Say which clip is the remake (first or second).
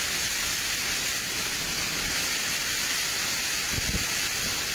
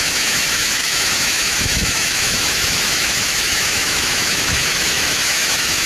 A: second